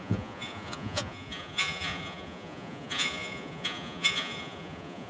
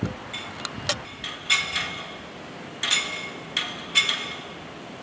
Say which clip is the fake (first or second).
first